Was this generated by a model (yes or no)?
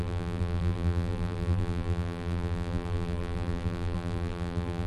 yes